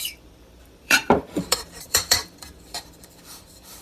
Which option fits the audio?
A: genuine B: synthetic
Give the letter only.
B